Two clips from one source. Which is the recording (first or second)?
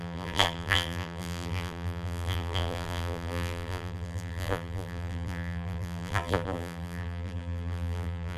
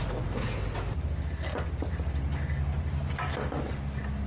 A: second